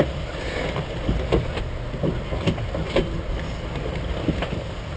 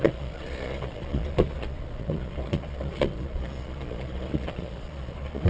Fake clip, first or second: second